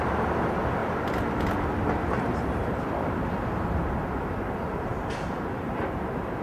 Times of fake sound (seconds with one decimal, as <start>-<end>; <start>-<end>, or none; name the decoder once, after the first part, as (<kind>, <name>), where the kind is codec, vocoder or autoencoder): none